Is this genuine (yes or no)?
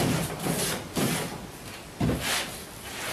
yes